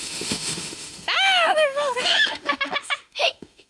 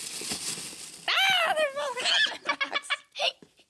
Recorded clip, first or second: second